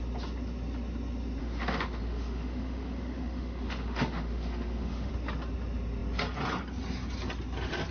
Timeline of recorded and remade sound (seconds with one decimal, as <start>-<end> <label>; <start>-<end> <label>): 0.0-1.4 recorded; 1.4-5.1 remade; 5.1-7.9 recorded